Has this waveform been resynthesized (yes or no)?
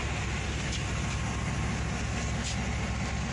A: no